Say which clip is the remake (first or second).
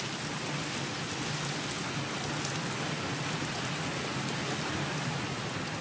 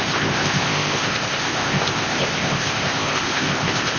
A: second